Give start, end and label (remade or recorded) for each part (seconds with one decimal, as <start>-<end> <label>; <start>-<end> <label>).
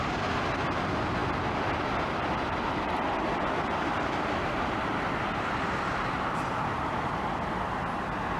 0.0-8.4 recorded